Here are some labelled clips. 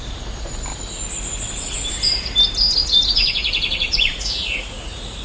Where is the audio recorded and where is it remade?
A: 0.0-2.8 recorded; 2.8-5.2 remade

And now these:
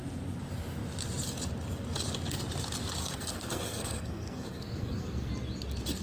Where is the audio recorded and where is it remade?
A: 0.0-3.0 recorded; 3.0-5.3 remade; 5.3-6.0 recorded

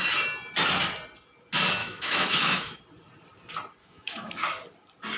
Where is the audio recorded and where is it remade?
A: 0.0-1.8 recorded; 1.8-2.8 remade; 2.8-3.8 recorded; 3.8-4.3 remade; 4.3-5.2 recorded

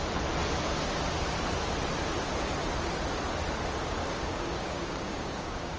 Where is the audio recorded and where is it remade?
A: 0.0-4.0 recorded; 4.0-5.8 remade

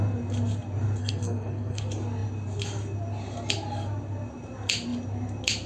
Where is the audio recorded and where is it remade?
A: 0.0-1.0 recorded; 1.0-1.8 remade; 1.8-5.7 recorded

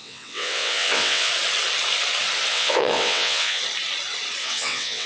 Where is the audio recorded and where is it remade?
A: 0.0-1.3 remade; 1.3-2.5 recorded; 2.5-3.6 remade; 3.6-4.4 recorded; 4.4-5.1 remade